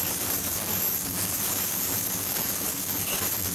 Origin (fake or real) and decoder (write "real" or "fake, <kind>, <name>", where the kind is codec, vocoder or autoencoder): fake, codec, DAC